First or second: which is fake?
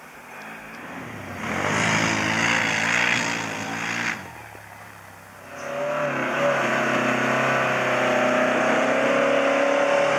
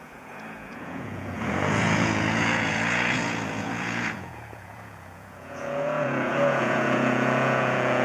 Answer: second